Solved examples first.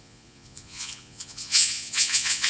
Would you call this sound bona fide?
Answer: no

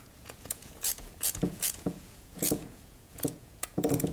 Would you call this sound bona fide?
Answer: no